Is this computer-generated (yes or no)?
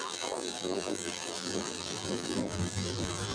yes